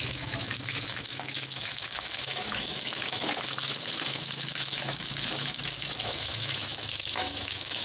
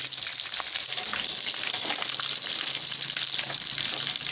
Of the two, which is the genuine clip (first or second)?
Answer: second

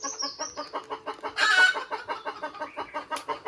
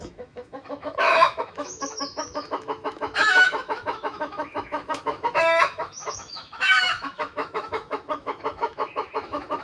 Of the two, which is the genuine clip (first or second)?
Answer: first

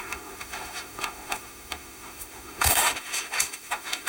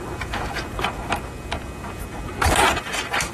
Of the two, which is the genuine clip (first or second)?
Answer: second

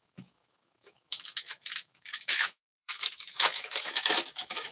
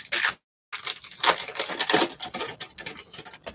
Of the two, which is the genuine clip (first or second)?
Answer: second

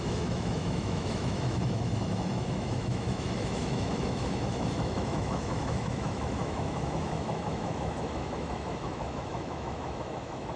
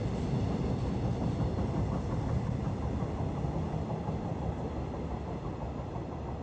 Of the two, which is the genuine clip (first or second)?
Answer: second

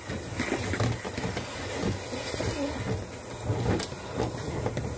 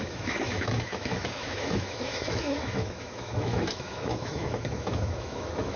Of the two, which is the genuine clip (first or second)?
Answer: first